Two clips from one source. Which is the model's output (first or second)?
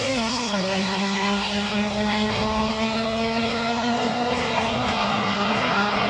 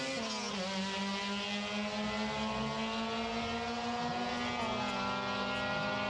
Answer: first